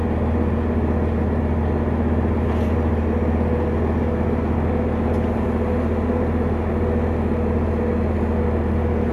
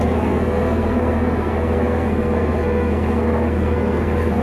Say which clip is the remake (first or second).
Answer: second